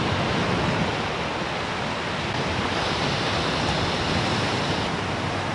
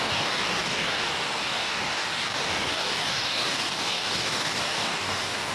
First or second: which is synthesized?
second